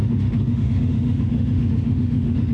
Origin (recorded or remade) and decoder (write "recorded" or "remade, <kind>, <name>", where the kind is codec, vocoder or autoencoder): remade, autoencoder, DAC-VAE